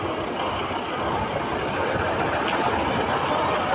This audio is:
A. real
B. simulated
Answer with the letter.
A